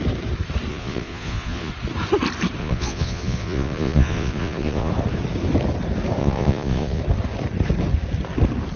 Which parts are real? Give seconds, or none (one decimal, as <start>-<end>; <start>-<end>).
0.0-0.7; 1.7-2.6; 4.9-6.2; 7.0-8.8